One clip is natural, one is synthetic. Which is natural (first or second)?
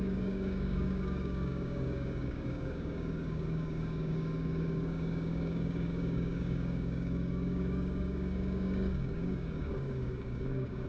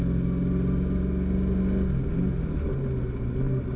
second